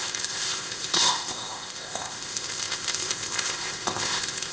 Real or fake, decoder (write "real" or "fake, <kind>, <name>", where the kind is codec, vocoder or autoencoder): fake, codec, ZipCodec